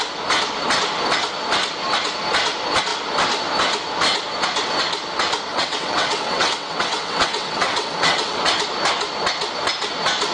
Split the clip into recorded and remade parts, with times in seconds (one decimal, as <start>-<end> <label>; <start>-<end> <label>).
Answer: 0.0-5.5 recorded; 5.5-8.5 remade; 8.5-10.3 recorded